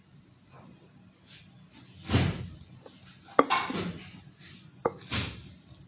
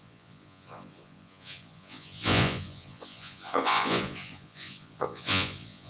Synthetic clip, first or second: second